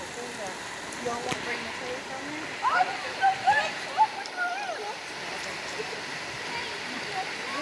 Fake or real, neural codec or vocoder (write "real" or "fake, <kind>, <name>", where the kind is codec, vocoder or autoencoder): real